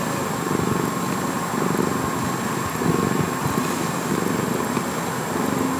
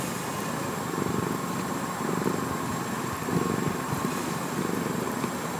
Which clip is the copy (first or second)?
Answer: second